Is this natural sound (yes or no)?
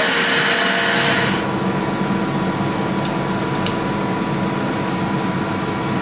yes